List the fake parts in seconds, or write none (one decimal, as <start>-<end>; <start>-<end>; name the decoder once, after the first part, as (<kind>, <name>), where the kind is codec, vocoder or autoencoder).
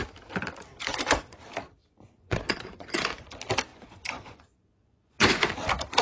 0.7-1.4 (vocoder, Vocos); 1.8-3.3; 3.7-5.5